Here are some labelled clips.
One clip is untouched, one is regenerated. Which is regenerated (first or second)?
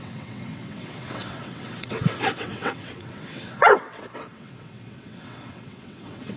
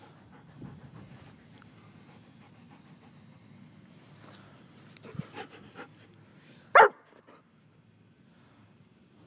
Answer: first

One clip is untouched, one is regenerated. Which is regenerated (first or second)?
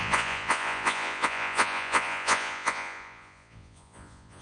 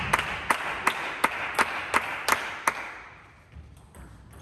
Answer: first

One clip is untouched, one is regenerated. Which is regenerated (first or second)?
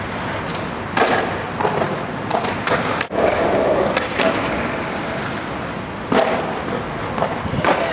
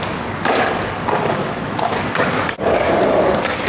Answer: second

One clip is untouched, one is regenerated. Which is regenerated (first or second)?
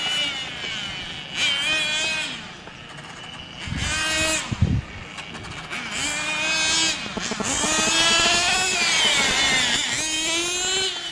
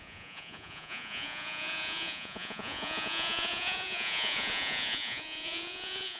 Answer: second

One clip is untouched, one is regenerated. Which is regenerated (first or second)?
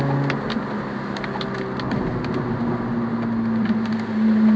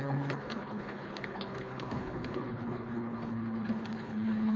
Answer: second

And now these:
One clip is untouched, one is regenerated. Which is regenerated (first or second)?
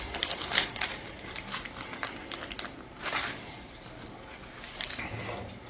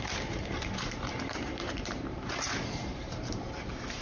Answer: second